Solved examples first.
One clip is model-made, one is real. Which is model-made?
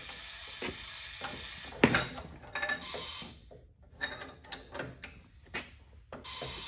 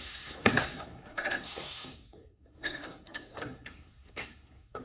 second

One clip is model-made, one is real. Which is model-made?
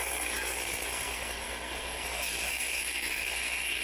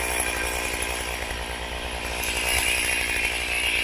first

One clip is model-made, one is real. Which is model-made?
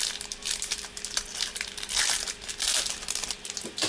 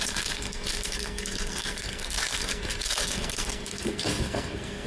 second